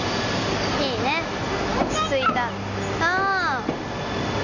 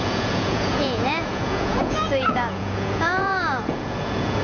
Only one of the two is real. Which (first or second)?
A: first